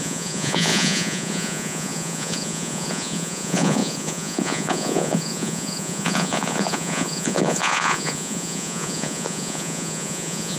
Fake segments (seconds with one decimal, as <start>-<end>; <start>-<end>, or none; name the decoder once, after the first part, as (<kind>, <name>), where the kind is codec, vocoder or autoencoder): 0.0-10.6 (vocoder, Vocos)